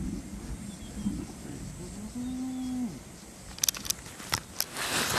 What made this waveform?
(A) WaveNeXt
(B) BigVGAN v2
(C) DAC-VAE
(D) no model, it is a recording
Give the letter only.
D